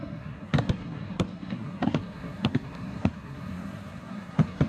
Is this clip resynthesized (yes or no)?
yes